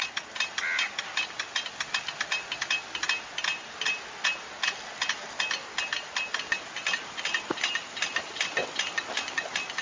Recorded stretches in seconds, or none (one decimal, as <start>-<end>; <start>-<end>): 0.0-6.8; 9.0-9.8